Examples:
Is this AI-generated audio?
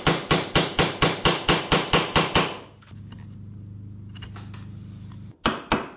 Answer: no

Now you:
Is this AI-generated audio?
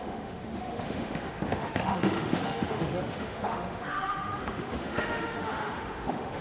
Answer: yes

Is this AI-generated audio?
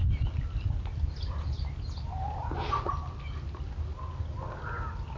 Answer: no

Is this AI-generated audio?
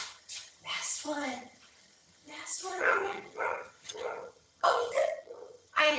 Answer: yes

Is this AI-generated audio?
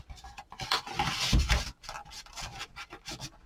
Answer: yes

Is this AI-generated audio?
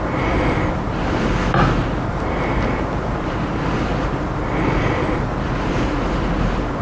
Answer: no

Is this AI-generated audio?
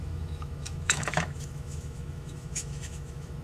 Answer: yes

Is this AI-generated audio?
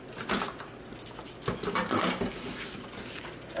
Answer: no